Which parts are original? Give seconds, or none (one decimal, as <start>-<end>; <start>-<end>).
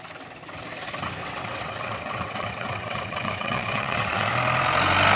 0.0-1.2; 4.3-5.2